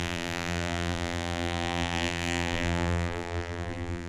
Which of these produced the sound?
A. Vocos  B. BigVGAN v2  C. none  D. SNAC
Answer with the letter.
B